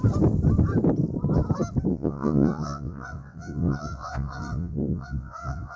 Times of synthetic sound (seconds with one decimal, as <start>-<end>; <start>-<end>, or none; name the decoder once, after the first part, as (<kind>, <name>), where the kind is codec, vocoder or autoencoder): 1.9-5.8 (vocoder, WaveNeXt)